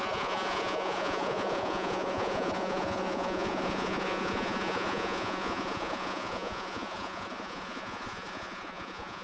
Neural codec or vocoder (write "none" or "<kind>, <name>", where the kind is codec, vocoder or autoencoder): vocoder, Vocos